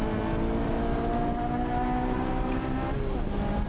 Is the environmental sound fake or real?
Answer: real